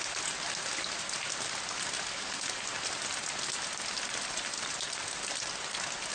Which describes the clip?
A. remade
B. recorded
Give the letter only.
B